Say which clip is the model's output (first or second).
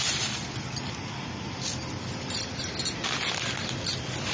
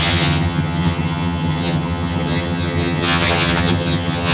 second